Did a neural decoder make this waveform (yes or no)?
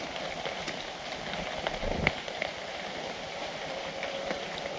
no